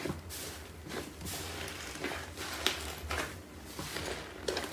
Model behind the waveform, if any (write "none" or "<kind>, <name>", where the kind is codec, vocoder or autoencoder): none